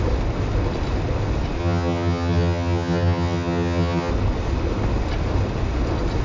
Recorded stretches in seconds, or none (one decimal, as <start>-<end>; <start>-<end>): 0.0-1.6; 4.1-6.2